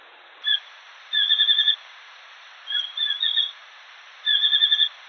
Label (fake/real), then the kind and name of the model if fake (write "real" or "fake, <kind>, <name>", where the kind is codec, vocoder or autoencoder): fake, vocoder, Vocos